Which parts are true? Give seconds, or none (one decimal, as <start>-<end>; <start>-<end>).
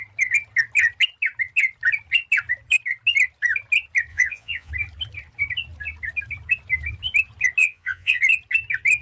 0.0-4.1; 4.7-7.6; 8.2-9.0